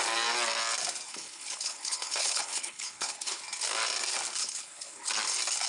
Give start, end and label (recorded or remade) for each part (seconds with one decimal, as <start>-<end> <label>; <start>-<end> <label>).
0.0-1.1 recorded; 1.1-3.4 remade; 3.4-4.4 recorded; 4.4-5.1 remade; 5.1-5.7 recorded

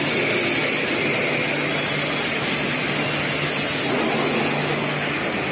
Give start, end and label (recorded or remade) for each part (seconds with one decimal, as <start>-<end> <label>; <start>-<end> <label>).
0.0-5.5 recorded

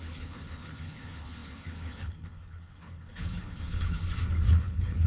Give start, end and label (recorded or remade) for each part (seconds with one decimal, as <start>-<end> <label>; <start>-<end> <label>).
0.0-4.0 remade; 4.0-4.6 recorded; 4.6-5.1 remade

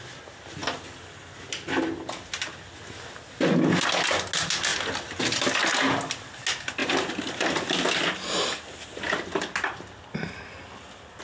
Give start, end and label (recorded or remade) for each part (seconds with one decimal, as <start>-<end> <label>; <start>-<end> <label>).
0.0-11.2 recorded

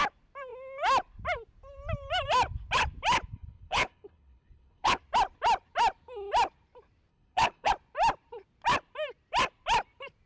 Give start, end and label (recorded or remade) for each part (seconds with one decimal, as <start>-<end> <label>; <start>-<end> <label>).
0.0-3.3 recorded; 3.3-5.0 remade; 5.0-7.1 recorded; 7.1-7.7 remade; 7.7-10.3 recorded

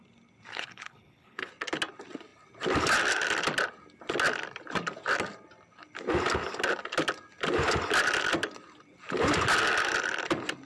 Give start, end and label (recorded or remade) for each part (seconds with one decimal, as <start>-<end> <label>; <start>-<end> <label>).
0.0-0.5 recorded; 0.5-1.5 remade; 1.5-10.7 recorded

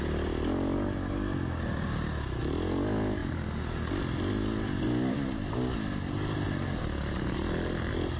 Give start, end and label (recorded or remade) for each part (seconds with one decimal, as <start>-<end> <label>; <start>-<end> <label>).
0.0-8.2 recorded

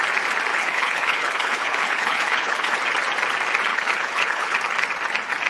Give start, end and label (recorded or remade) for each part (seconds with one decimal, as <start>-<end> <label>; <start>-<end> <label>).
0.0-0.5 recorded; 0.5-2.7 remade; 2.7-3.7 recorded; 3.7-4.6 remade; 4.6-5.5 recorded